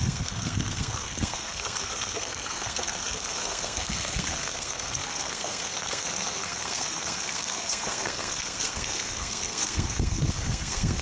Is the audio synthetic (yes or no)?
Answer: yes